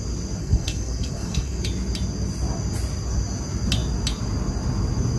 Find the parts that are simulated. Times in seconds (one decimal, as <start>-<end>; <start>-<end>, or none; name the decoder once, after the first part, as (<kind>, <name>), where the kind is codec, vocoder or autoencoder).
0.4-1.6 (codec, SNAC)